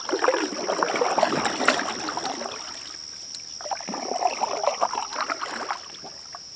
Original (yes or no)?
yes